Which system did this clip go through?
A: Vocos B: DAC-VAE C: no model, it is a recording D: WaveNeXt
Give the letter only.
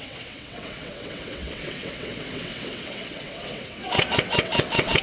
D